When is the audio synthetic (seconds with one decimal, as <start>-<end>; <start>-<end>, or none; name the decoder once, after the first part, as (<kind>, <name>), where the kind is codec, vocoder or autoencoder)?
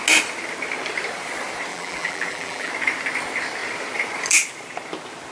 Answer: 1.7-2.7 (vocoder, BigVGAN v2)